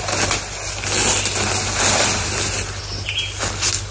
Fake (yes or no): no